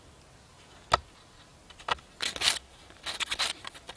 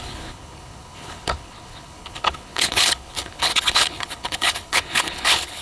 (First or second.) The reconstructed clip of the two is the second